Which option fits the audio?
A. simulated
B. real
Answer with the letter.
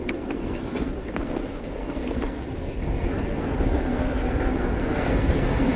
A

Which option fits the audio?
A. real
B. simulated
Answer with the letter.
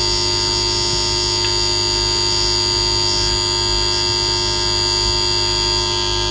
A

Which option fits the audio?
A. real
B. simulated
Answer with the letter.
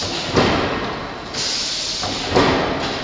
A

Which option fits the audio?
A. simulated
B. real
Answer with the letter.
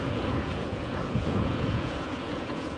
A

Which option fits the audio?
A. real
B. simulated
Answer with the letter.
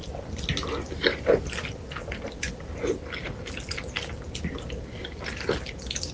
A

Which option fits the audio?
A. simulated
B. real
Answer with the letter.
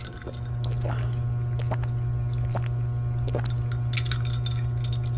B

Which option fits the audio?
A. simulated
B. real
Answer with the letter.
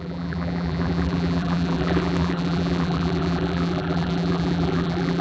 A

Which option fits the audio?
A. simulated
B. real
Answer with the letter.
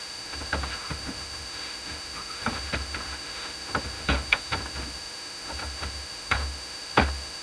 A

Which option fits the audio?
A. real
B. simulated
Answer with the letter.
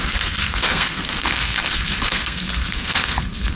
B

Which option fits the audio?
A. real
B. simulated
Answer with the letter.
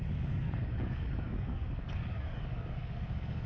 B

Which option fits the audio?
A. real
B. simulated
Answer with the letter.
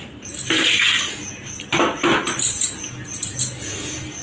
A